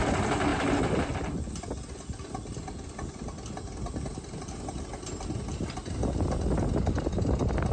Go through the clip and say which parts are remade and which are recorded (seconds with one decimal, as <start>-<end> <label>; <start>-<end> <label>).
0.0-7.7 recorded